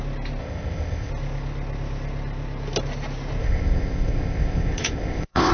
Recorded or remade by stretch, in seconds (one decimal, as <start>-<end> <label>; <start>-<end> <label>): 0.0-0.4 recorded; 0.4-1.1 remade; 1.1-3.4 recorded; 3.4-5.5 remade